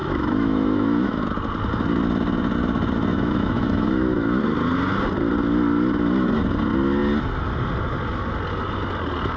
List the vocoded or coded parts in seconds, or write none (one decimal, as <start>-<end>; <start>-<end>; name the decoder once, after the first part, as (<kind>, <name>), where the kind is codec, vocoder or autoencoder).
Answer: 0.0-1.3 (autoencoder, DAC-VAE); 3.1-4.4